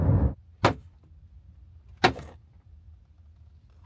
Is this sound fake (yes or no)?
no